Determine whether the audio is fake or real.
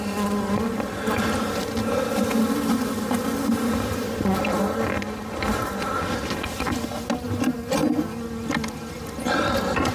real